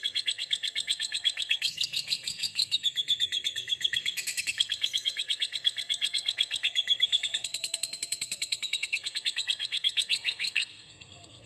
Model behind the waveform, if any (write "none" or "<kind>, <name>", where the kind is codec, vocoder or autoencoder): codec, SNAC